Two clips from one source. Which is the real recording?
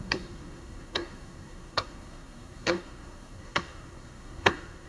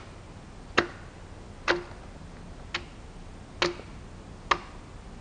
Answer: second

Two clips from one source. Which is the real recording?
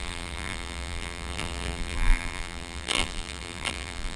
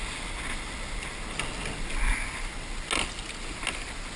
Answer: second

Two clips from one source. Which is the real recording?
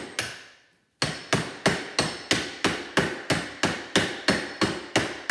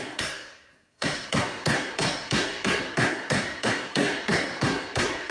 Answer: first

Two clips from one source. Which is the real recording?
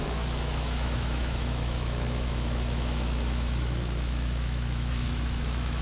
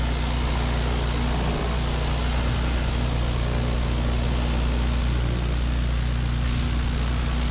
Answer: second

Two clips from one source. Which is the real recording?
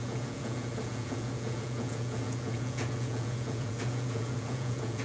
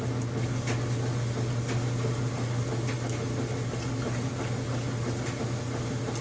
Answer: second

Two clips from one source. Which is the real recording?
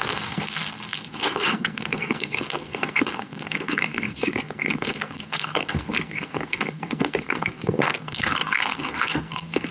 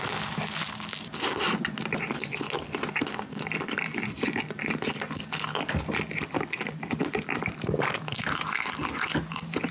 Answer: second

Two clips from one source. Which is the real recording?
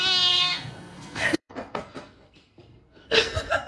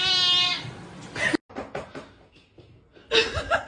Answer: second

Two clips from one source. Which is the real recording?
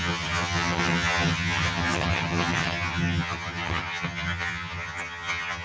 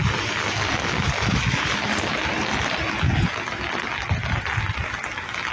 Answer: second